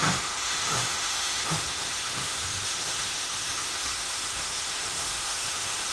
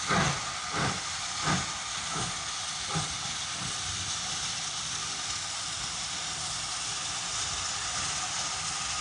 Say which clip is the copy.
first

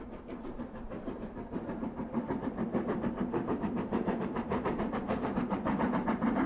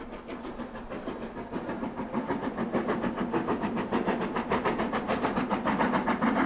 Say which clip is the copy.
first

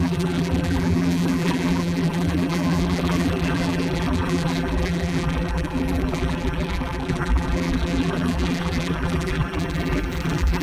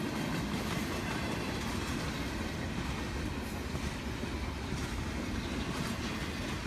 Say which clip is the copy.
first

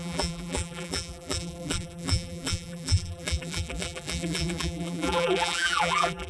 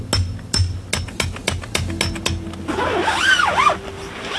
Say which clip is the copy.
first